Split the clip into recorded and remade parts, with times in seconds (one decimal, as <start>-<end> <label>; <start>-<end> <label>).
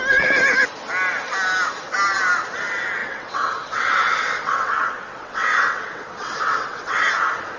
0.0-3.0 recorded; 3.0-7.1 remade; 7.1-7.6 recorded